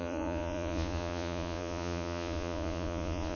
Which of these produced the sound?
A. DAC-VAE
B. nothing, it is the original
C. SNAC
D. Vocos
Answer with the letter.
D